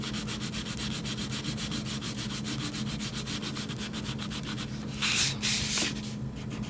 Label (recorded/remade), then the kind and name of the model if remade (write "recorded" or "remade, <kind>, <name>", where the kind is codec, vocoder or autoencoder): recorded